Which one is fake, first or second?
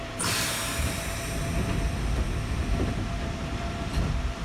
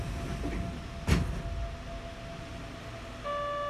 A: first